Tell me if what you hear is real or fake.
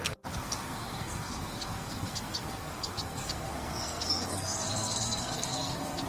fake